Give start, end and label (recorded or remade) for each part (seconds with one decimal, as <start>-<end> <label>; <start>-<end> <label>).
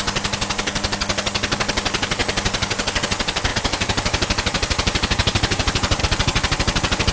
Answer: 0.0-3.5 recorded; 3.5-6.0 remade; 6.0-7.1 recorded